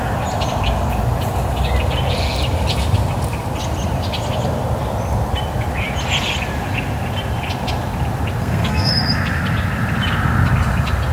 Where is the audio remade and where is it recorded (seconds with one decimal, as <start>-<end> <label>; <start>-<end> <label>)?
0.0-8.4 recorded; 8.4-8.9 remade; 8.9-11.1 recorded